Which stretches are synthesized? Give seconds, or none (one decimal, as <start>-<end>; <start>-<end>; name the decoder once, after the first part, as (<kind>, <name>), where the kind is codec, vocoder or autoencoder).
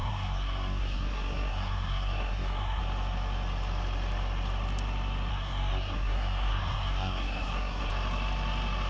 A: 0.0-2.8 (codec, SNAC); 5.3-7.9